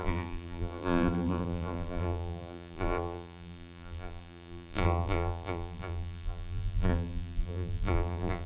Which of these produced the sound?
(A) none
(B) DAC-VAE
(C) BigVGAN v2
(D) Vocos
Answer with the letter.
C